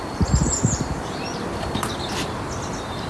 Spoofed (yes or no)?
no